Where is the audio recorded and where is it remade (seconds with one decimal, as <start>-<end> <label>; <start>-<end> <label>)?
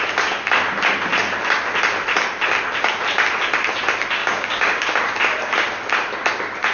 0.0-4.2 recorded; 4.2-5.0 remade; 5.0-6.7 recorded